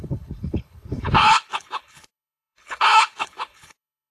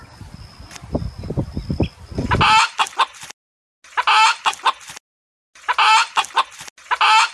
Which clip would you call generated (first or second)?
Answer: first